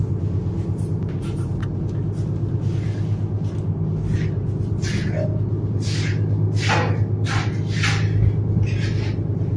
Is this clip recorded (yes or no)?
yes